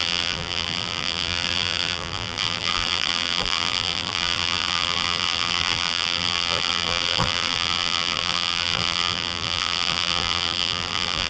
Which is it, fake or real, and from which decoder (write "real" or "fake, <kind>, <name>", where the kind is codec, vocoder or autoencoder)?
fake, vocoder, BigVGAN v2